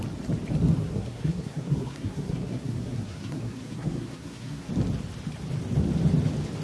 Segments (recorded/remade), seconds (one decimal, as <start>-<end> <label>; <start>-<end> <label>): 0.0-0.8 recorded; 0.8-4.7 remade; 4.7-6.6 recorded